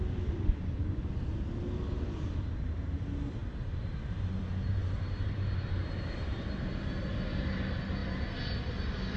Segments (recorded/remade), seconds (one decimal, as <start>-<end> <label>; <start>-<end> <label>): 0.0-3.4 recorded; 3.4-6.8 remade; 6.8-9.2 recorded